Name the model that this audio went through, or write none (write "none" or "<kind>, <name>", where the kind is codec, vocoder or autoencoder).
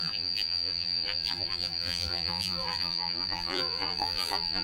vocoder, BigVGAN v2